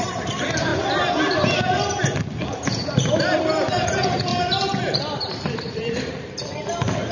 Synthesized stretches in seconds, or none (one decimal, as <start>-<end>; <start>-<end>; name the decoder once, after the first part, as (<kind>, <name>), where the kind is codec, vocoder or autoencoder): 0.0-0.7 (vocoder, BigVGAN v2); 3.4-4.3; 5.0-7.1